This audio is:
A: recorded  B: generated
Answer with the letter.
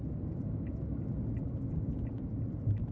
A